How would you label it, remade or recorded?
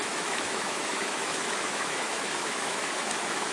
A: remade